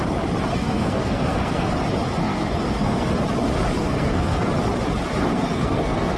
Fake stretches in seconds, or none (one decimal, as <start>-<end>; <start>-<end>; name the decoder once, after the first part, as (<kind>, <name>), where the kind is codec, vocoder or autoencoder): 0.5-1.7 (codec, SNAC); 2.2-3.1; 3.8-4.5; 5.3-6.2